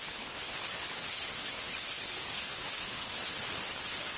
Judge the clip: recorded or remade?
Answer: remade